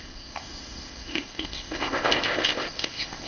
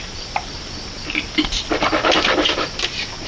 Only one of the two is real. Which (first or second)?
second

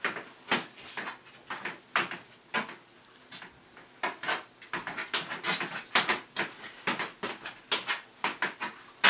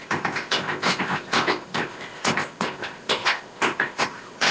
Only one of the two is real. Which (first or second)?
first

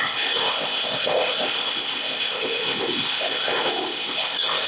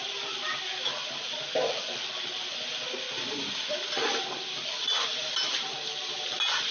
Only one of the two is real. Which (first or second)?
second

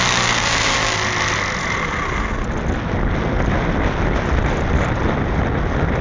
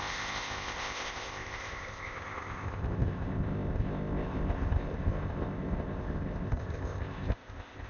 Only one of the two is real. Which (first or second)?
first